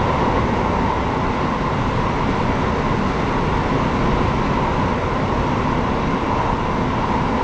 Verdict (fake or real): real